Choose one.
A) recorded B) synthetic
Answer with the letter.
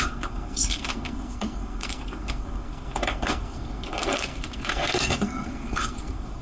B